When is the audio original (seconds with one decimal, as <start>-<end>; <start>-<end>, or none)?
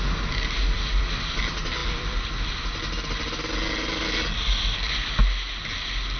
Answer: 0.0-6.2